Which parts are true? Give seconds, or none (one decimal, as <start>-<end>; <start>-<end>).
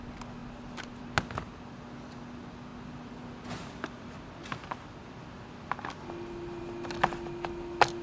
0.0-8.0